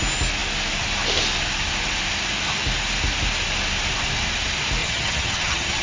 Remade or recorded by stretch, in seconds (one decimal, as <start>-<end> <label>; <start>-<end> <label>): 0.0-4.8 recorded; 4.8-5.8 remade